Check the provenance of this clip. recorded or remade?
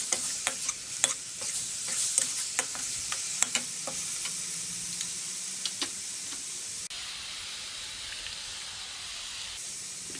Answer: recorded